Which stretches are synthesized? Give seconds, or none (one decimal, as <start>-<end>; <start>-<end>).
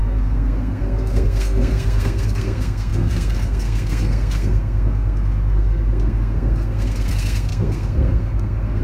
0.0-8.8